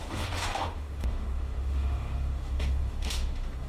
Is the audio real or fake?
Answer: fake